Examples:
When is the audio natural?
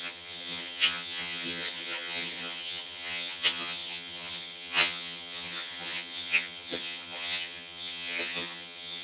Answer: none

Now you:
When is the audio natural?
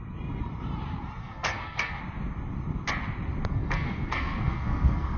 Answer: 0.0-1.2; 2.0-3.5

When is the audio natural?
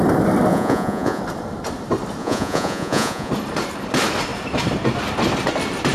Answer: 0.0-0.5; 1.2-2.2; 3.3-5.9